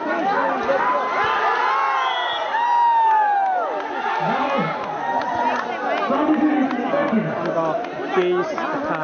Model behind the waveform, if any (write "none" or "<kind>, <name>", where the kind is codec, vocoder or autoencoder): none